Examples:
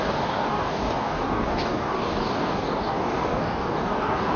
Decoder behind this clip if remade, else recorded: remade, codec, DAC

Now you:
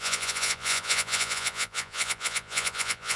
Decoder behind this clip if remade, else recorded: remade, vocoder, Vocos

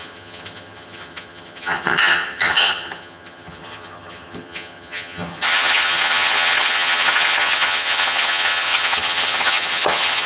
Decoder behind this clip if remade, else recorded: remade, vocoder, HiFi-GAN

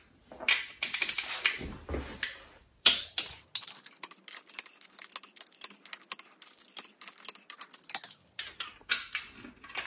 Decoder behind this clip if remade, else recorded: recorded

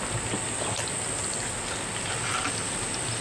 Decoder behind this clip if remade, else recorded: recorded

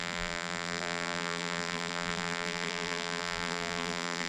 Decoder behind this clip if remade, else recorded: remade, vocoder, BigVGAN v2